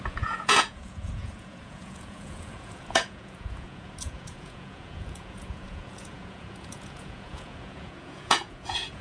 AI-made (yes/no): yes